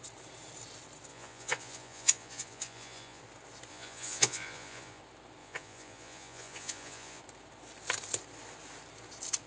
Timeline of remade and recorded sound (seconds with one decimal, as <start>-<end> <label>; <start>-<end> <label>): 0.0-1.1 recorded; 1.1-3.2 remade; 3.2-3.7 recorded; 3.7-5.0 remade; 5.0-5.4 recorded; 5.4-7.2 remade; 7.2-9.5 recorded